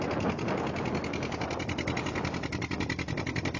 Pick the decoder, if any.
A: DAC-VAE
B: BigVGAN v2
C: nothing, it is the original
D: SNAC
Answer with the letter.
C